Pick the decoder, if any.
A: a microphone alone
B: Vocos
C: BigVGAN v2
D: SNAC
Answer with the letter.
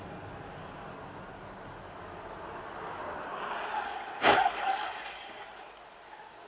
A